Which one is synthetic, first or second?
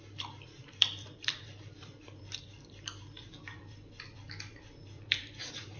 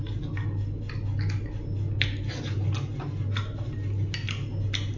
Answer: first